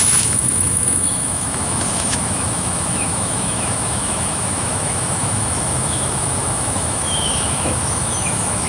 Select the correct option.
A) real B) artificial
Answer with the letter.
B